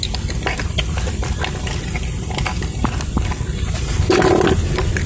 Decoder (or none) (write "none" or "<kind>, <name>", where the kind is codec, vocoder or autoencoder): none